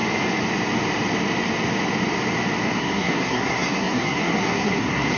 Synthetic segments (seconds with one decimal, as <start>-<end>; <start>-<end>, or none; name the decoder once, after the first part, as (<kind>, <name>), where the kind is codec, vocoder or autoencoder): 2.8-5.2 (codec, SNAC)